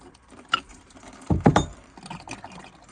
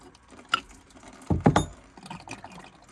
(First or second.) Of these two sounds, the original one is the second